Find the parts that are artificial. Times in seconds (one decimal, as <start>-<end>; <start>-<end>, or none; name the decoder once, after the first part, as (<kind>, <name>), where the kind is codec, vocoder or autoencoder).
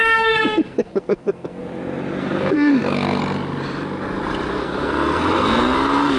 0.0-1.6 (codec, SNAC); 2.2-3.2; 4.5-6.2